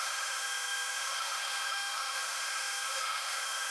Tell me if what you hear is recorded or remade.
remade